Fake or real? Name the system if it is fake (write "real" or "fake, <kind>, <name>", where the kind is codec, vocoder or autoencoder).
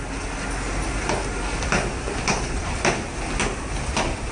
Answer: real